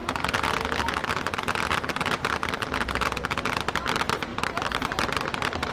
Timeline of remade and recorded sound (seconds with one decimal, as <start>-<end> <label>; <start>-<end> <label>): 0.0-4.3 recorded; 4.3-5.7 remade